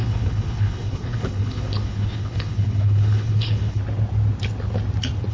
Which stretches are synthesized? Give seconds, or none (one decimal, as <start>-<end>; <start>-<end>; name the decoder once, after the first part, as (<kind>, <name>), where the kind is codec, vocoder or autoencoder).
0.0-3.8 (codec, HILCodec)